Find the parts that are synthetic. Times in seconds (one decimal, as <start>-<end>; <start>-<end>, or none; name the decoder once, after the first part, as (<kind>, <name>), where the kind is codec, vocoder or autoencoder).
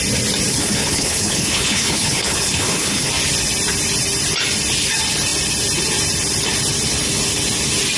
0.5-3.1 (codec, HILCodec)